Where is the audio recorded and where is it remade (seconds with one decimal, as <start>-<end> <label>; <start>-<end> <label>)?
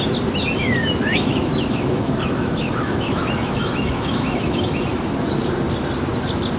0.0-0.8 recorded; 0.8-4.8 remade; 4.8-6.6 recorded